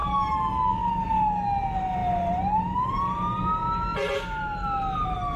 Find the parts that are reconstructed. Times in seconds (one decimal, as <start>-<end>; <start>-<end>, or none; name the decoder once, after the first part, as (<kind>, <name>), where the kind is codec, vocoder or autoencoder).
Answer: none